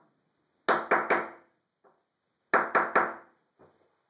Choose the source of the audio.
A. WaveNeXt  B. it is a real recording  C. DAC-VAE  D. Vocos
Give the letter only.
B